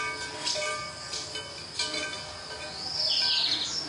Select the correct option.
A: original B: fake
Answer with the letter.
A